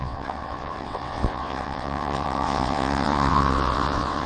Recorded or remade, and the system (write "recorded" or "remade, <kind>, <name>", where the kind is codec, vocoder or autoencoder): remade, vocoder, WaveNeXt